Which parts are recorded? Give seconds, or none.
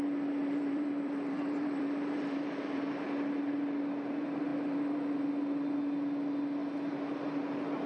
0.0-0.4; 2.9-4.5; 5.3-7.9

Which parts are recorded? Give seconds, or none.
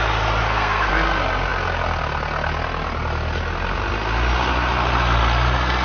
0.0-0.4; 0.9-5.8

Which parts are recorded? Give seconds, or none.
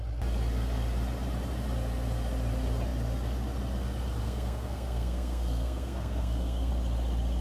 0.0-4.2; 6.7-7.4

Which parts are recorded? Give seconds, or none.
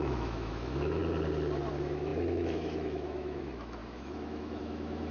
1.0-1.7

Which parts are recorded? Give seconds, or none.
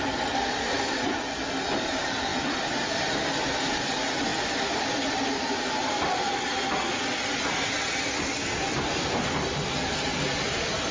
0.0-4.3; 5.5-10.9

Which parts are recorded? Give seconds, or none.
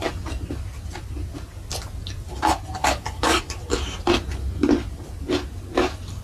0.0-2.8; 3.4-6.2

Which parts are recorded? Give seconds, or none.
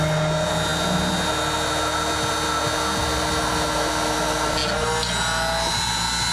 0.0-6.3